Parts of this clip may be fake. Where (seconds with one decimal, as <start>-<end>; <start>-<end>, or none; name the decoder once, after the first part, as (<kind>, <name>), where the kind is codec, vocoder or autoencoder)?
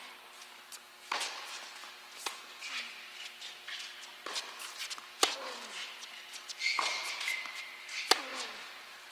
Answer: none